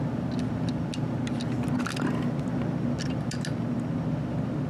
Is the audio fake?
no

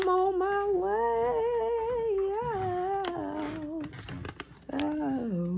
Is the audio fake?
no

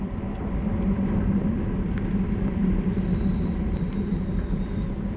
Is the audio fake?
no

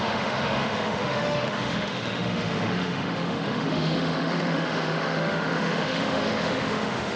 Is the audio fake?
yes